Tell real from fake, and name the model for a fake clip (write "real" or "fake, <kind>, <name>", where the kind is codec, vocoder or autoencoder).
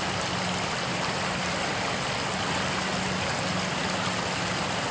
real